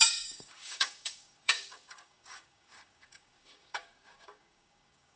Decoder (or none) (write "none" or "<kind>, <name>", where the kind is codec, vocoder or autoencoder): codec, DAC